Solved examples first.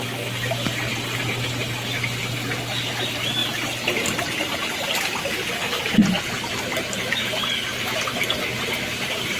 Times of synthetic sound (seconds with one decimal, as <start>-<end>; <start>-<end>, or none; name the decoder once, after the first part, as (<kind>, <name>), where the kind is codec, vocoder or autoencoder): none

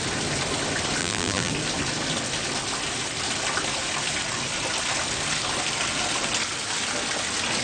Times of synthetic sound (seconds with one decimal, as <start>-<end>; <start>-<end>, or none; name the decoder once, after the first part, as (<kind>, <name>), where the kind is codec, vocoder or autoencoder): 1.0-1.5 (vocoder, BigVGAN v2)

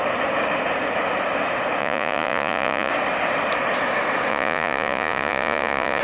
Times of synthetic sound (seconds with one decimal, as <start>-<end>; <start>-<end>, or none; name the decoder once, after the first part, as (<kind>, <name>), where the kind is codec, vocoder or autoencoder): 1.8-2.9 (vocoder, Vocos); 4.3-6.0

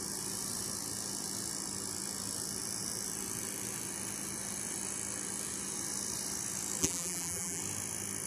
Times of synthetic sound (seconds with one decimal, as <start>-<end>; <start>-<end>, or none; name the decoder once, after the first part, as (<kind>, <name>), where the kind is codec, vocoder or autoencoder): 6.8-7.6 (vocoder, BigVGAN v2)

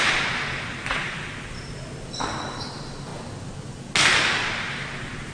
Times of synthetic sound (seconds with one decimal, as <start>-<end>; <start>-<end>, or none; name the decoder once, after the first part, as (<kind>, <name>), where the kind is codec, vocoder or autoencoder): 0.0-3.1 (vocoder, BigVGAN v2); 4.5-5.3

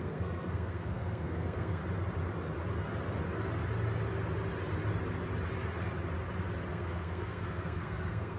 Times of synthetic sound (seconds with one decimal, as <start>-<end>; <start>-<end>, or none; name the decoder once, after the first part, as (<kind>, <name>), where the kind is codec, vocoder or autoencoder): 0.0-1.8 (codec, SNAC); 6.7-8.4

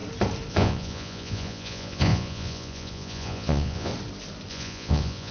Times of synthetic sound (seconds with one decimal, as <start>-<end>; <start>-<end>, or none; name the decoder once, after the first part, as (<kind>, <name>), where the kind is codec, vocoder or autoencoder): 0.5-3.9 (vocoder, Vocos); 4.5-5.3